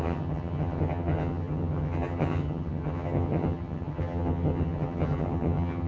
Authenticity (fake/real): fake